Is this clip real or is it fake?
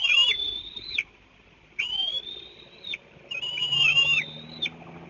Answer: real